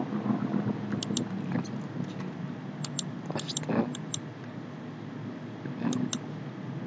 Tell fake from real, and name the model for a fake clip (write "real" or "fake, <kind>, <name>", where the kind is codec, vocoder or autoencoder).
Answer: real